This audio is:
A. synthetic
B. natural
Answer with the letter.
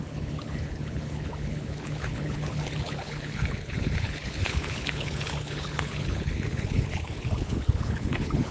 A